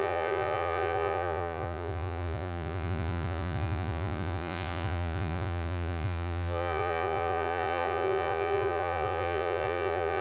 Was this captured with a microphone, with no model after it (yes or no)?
no